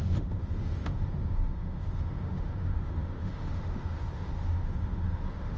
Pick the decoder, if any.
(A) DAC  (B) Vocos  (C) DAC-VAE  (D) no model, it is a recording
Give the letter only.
C